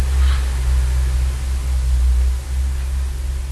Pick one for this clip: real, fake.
real